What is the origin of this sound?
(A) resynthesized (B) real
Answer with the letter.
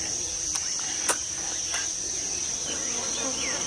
B